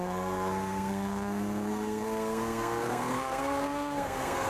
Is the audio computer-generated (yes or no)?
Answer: yes